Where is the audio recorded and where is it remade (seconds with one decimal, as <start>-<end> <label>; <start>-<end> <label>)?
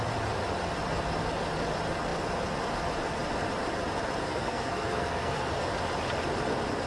0.0-4.2 recorded; 4.2-5.5 remade; 5.5-6.9 recorded